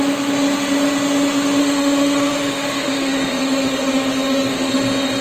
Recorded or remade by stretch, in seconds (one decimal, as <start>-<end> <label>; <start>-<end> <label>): 0.0-1.6 recorded; 1.6-4.7 remade; 4.7-5.2 recorded